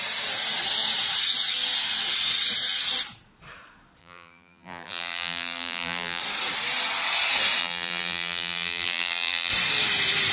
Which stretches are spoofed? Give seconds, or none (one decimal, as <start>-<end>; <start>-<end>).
4.0-6.2; 7.6-9.5